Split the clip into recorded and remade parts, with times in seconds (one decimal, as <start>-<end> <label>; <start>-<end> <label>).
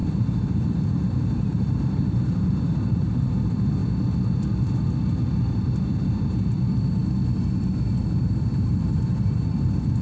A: 0.0-3.8 remade; 3.8-5.4 recorded; 5.4-7.0 remade; 7.0-8.2 recorded; 8.2-10.0 remade